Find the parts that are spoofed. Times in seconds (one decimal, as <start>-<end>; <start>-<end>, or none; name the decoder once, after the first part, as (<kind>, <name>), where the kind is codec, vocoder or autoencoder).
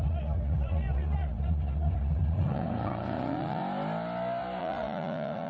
0.0-3.6 (vocoder, Vocos); 4.6-5.5